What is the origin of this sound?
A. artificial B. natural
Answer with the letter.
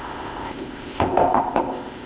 A